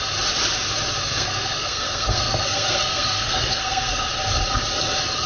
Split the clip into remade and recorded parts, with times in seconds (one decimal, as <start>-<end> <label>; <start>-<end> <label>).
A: 0.0-1.0 recorded; 1.0-4.1 remade; 4.1-5.3 recorded